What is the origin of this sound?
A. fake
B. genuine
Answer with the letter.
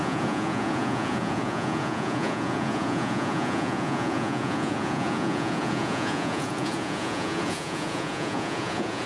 A